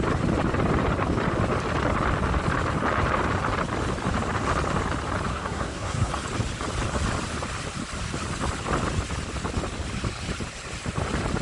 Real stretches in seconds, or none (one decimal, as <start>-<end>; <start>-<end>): 0.0-5.3; 6.1-11.4